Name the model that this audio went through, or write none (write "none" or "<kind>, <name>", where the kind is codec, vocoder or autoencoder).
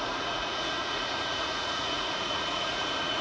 vocoder, Vocos